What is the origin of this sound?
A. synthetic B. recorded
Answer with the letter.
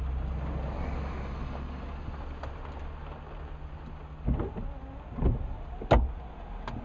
B